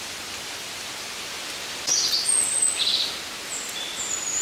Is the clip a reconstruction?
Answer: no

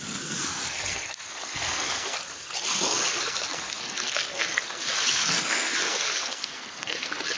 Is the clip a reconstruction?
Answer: yes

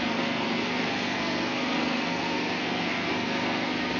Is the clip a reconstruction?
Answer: yes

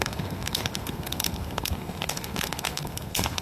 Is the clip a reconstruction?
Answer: yes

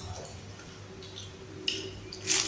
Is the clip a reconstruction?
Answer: no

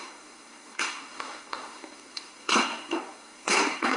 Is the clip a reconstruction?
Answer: yes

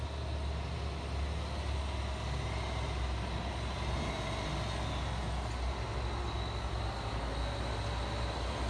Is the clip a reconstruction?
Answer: no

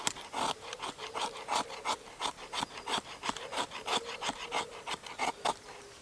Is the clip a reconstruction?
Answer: no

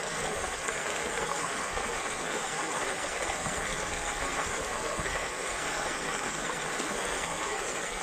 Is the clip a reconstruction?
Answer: yes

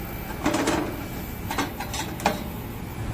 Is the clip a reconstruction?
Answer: no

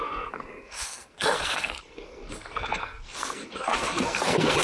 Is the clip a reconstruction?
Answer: yes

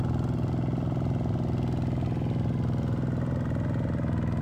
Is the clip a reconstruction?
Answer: no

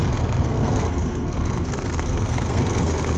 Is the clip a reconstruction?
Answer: yes